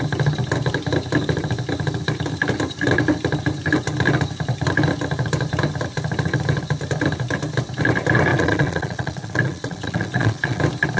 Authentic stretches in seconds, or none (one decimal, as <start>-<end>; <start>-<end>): 0.0-8.3; 10.6-11.0